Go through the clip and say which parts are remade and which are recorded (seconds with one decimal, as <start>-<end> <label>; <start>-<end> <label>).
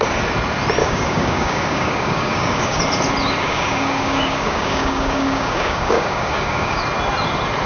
0.0-0.8 recorded; 0.8-2.8 remade; 2.8-3.4 recorded; 3.4-6.8 remade; 6.8-7.7 recorded